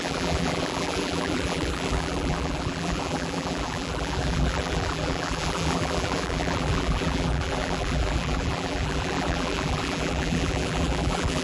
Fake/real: fake